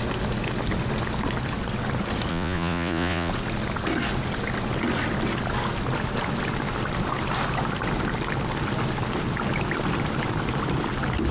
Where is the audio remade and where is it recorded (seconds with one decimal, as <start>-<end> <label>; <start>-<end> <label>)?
0.0-2.3 recorded; 2.3-3.3 remade; 3.3-11.3 recorded